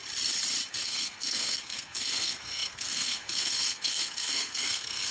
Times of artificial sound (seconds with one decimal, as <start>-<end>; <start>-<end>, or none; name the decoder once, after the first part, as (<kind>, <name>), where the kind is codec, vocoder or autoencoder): 0.7-5.1 (codec, SNAC)